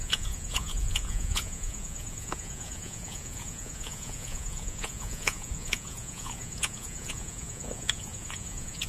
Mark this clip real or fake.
fake